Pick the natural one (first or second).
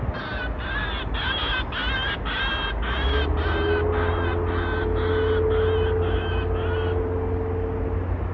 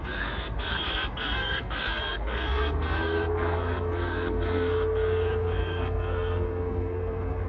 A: first